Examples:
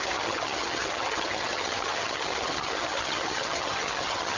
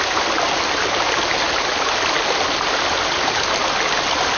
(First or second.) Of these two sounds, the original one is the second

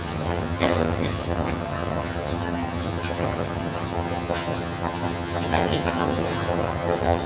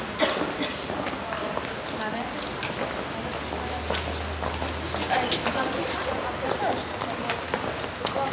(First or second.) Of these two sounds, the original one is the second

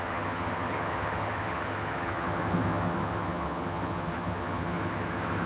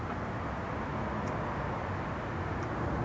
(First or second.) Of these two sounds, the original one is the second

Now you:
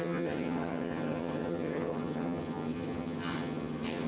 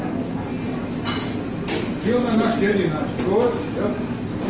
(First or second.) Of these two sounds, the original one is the second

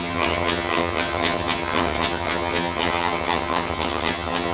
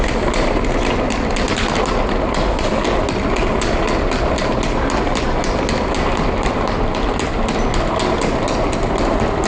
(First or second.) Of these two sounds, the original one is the second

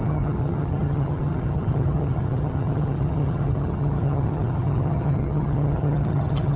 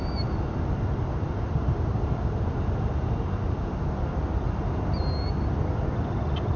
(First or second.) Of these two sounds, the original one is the second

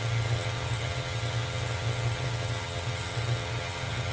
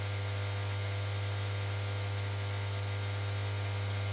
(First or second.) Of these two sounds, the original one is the second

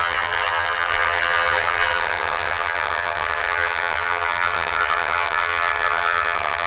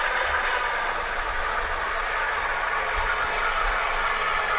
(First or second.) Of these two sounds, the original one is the second